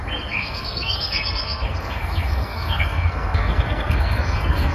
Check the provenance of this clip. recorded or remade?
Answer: remade